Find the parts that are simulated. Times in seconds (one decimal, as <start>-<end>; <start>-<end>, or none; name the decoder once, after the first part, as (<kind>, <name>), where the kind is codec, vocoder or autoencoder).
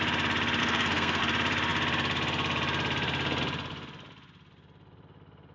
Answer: 0.6-1.2 (codec, SNAC)